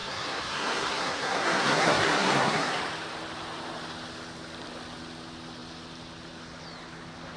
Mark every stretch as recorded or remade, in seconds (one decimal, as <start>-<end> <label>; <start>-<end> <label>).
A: 0.0-2.8 remade; 2.8-7.4 recorded